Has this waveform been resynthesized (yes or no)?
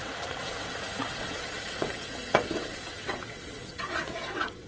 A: yes